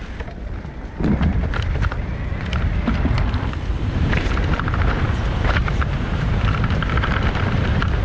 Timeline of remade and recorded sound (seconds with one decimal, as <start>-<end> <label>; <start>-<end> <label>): 0.0-3.8 recorded; 3.8-8.0 remade